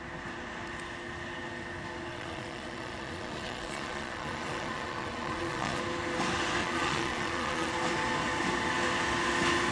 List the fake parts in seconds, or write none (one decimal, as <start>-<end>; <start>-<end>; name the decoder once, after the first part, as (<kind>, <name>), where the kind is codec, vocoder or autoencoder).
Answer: 2.1-5.8 (vocoder, Vocos); 6.6-7.7